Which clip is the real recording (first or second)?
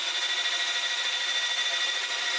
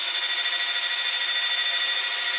second